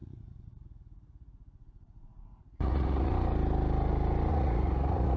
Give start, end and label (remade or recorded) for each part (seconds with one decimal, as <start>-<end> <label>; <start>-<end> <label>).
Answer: 0.0-3.1 remade; 3.1-4.3 recorded; 4.3-5.2 remade